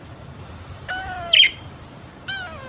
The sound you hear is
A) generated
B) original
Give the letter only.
A